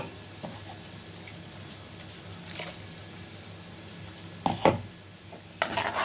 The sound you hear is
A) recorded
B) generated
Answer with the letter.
A